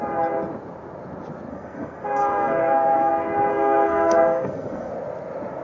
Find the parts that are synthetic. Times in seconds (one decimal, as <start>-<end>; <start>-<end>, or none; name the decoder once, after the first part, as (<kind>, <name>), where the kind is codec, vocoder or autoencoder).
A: 1.5-3.1 (codec, SNAC); 3.5-4.9